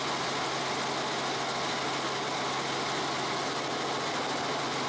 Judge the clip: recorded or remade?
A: recorded